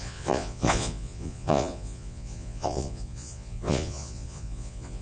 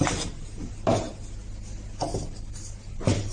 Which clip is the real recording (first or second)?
second